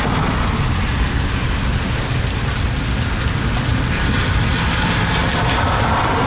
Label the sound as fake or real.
real